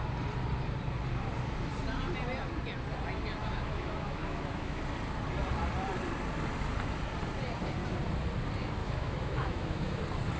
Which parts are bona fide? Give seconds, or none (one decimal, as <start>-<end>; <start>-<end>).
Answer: 0.0-3.4; 4.8-8.8; 10.0-10.4